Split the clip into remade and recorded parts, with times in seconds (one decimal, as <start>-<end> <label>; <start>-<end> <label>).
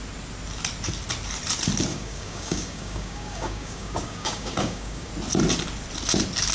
0.0-1.9 recorded; 1.9-5.1 remade; 5.1-6.5 recorded